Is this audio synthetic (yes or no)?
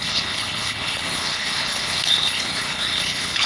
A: yes